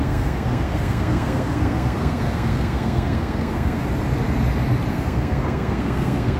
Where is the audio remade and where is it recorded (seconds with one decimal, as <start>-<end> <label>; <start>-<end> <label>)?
0.0-3.8 remade; 3.8-4.9 recorded; 4.9-6.4 remade